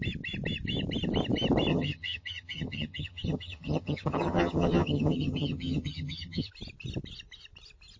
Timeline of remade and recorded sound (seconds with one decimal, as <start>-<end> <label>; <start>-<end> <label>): 0.0-1.7 recorded; 1.7-6.5 remade; 6.5-8.0 recorded